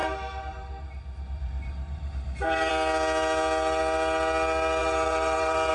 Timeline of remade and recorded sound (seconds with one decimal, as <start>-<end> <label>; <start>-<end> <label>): 0.0-2.7 remade; 2.7-4.8 recorded; 4.8-5.7 remade

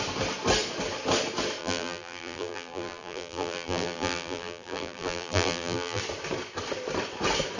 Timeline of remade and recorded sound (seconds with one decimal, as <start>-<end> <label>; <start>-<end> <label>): 0.0-1.6 recorded; 1.6-6.0 remade; 6.0-7.6 recorded

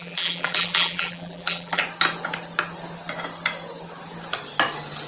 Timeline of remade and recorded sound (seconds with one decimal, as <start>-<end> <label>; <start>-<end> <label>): 0.0-1.8 remade; 1.8-5.1 recorded

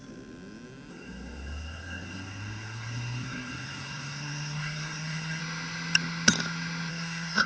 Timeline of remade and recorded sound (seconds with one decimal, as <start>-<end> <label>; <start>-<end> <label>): 0.0-0.9 recorded; 0.9-5.4 remade; 5.4-6.9 recorded; 6.9-7.5 remade

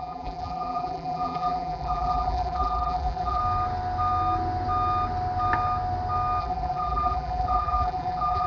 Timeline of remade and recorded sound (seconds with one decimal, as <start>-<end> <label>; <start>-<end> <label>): 0.0-3.4 remade; 3.4-6.4 recorded; 6.4-8.5 remade

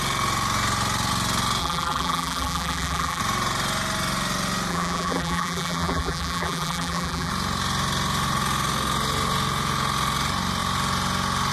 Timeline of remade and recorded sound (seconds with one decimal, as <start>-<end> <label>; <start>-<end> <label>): 0.0-1.6 recorded; 1.6-3.2 remade; 3.2-4.7 recorded; 4.7-7.3 remade; 7.3-11.5 recorded